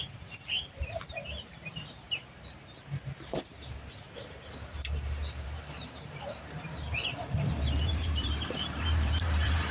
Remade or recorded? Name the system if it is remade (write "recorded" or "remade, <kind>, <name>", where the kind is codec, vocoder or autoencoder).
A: remade, vocoder, BigVGAN v2